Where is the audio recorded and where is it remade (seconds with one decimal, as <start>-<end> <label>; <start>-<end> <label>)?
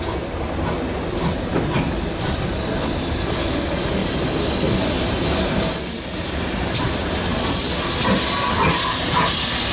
0.0-9.7 recorded